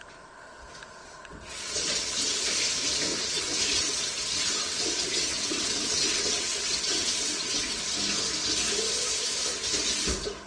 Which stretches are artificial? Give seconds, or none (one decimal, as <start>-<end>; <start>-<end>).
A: 1.0-2.4; 3.1-7.8